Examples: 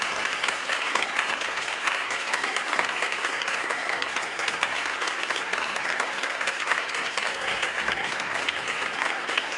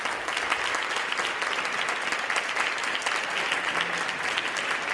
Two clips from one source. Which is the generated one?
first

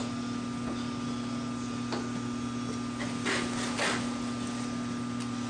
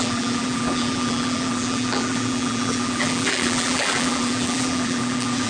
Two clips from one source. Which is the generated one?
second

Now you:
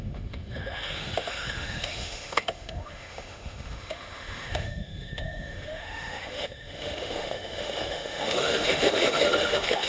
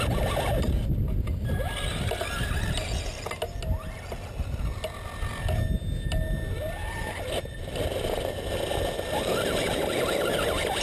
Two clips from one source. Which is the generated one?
first